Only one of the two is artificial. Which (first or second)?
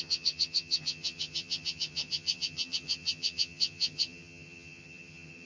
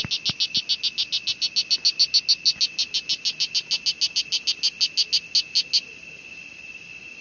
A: first